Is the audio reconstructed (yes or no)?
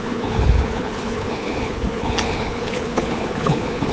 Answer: yes